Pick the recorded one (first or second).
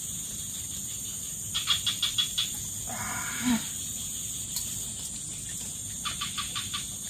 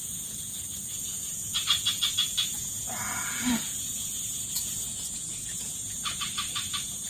first